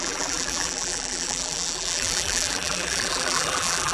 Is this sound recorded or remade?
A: remade